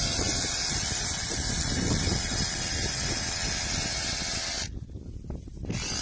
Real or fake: real